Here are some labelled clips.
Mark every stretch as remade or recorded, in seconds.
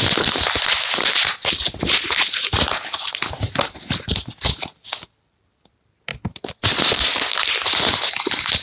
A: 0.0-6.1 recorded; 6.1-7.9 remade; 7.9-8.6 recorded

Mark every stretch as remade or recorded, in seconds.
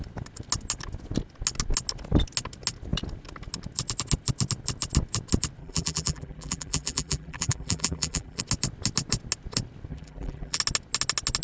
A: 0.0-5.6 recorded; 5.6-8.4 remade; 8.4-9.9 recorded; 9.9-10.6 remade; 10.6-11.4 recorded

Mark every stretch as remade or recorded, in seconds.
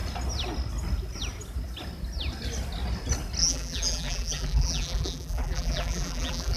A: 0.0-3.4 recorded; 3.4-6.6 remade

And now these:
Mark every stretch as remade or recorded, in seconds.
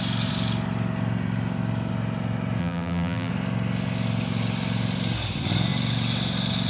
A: 0.0-2.6 recorded; 2.6-3.3 remade; 3.3-6.7 recorded